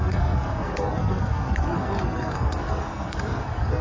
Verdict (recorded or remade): remade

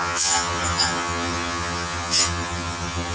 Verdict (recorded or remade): remade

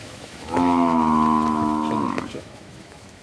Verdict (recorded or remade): remade